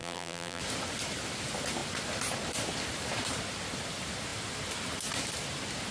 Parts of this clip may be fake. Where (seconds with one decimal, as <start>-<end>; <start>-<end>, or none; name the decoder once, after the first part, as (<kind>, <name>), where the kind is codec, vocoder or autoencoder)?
0.0-0.6 (vocoder, BigVGAN v2)